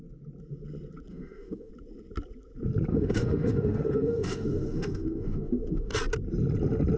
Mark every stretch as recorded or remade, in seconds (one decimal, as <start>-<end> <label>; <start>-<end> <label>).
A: 0.0-1.1 recorded; 1.1-1.7 remade; 1.7-2.9 recorded; 2.9-5.9 remade; 5.9-7.0 recorded